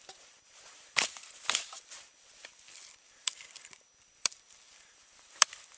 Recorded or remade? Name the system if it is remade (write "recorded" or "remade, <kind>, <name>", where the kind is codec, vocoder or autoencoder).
remade, vocoder, BigVGAN v2